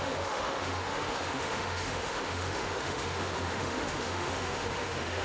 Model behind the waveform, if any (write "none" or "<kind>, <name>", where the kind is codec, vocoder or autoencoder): autoencoder, DAC-VAE